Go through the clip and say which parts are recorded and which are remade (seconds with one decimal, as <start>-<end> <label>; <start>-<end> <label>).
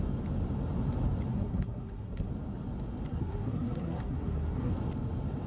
0.0-1.3 recorded; 1.3-2.3 remade; 2.3-3.1 recorded; 3.1-4.7 remade; 4.7-5.5 recorded